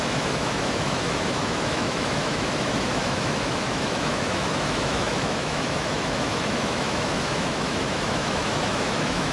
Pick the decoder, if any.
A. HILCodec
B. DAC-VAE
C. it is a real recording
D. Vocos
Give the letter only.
B